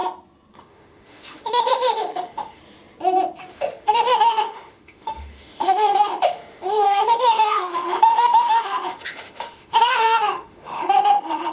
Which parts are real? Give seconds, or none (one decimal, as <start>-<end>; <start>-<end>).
0.0-0.6; 2.6-3.4